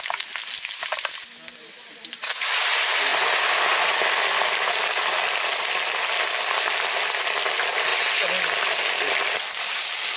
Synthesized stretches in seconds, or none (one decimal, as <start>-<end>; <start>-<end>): none